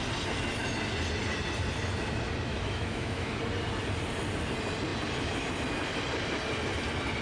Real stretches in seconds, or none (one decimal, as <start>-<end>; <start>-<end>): 0.0-2.5; 3.4-7.2